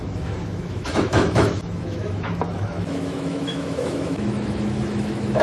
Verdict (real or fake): fake